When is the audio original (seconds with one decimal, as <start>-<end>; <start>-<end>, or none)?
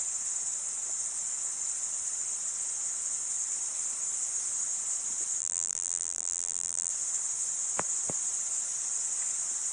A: 0.0-5.4; 6.9-9.7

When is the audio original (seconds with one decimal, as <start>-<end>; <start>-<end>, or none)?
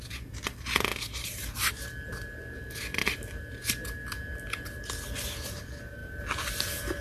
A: 0.0-0.9; 1.7-7.0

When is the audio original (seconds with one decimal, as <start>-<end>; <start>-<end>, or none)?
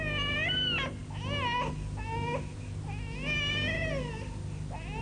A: 0.0-5.0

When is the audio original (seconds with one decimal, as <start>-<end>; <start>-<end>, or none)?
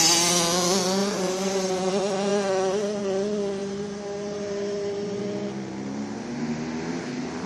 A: 0.0-1.0; 1.7-3.6; 5.2-7.5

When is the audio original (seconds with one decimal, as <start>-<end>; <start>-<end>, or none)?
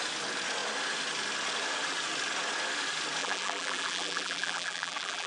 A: 0.0-3.2